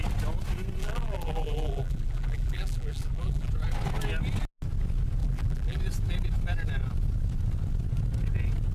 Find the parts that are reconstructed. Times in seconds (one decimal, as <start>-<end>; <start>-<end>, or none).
0.8-3.5; 5.2-5.8